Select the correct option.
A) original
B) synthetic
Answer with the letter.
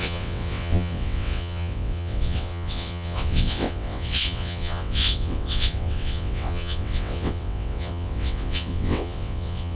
B